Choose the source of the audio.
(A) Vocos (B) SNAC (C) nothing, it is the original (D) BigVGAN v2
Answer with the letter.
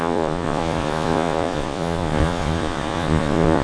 A